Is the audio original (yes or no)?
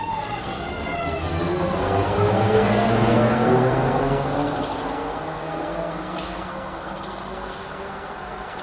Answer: no